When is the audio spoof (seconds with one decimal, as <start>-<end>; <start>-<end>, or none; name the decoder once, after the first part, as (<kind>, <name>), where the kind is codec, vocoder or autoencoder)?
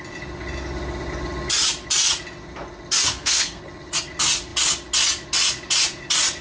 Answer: 3.1-3.6 (codec, SNAC)